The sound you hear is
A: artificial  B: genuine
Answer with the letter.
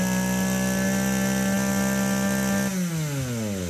B